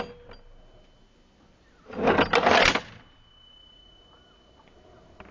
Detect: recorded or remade recorded